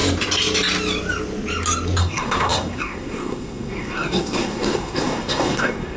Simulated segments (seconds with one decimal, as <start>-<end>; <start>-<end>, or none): 2.0-6.0